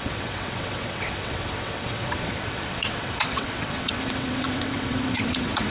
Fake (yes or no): yes